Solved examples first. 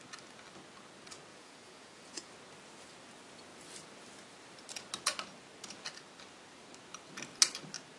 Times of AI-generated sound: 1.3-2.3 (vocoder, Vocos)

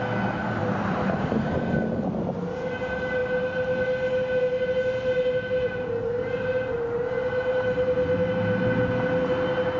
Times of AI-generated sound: 0.6-1.6 (vocoder, BigVGAN v2)

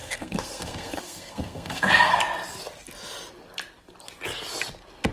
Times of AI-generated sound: 0.0-2.2 (codec, SNAC)

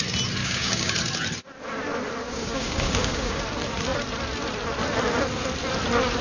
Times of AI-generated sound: 0.4-0.9 (codec, DAC); 2.2-3.4